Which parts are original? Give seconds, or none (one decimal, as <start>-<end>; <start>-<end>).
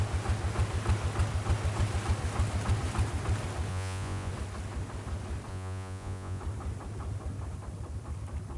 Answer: 0.0-3.7; 4.3-5.5; 6.4-8.6